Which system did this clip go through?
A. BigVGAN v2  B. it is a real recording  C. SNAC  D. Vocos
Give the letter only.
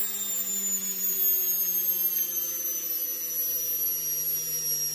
B